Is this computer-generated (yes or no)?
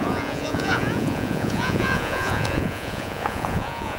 yes